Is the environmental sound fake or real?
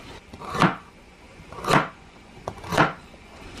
fake